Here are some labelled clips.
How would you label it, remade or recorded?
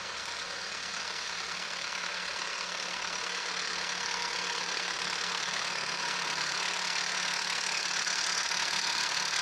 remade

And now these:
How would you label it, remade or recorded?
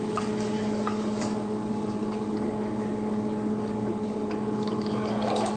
remade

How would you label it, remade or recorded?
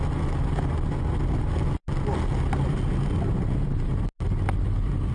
recorded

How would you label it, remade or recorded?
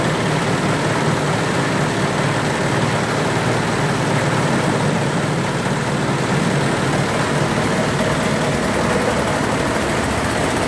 recorded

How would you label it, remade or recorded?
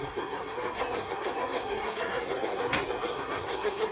remade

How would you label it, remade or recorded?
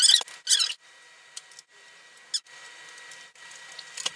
recorded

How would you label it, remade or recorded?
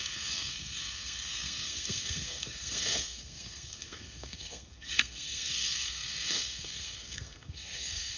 remade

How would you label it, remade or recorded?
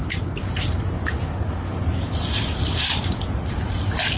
remade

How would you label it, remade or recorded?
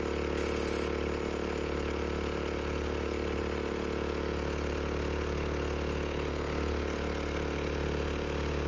recorded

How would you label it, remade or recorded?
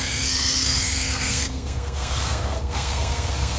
remade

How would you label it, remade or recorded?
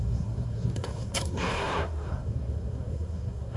remade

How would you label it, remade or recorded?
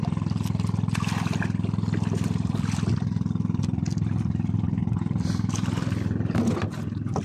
recorded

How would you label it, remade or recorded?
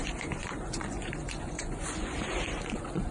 remade